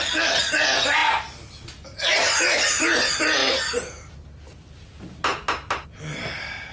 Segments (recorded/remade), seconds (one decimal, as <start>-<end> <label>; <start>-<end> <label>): 0.0-6.7 recorded